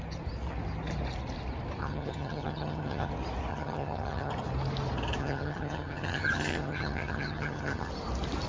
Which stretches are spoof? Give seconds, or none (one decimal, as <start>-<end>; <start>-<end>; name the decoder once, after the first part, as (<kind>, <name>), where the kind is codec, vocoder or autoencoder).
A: 1.8-3.1 (vocoder, HiFi-GAN); 3.5-4.3; 5.2-7.9